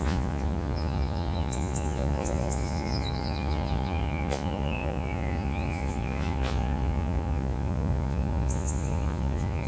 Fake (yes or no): yes